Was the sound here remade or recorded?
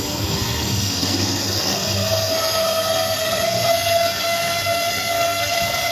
remade